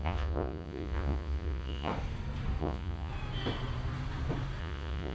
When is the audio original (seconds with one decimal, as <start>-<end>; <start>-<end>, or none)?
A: 1.9-2.6; 3.1-4.6